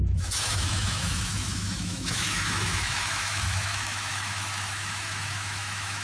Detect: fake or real fake